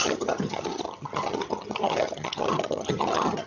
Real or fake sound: fake